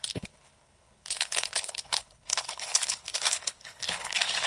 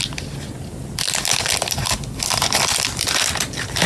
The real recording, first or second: second